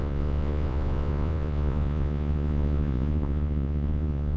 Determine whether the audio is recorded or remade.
remade